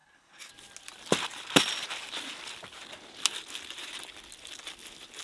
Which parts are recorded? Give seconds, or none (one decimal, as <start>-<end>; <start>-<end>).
0.5-5.2